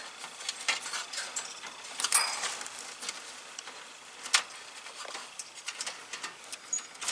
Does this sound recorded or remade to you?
recorded